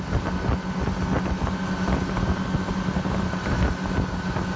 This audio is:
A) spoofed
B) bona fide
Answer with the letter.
B